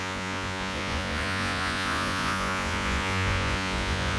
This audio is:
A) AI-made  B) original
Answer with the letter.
A